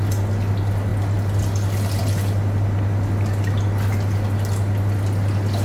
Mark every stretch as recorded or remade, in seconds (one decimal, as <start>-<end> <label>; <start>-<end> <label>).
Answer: 0.0-5.6 recorded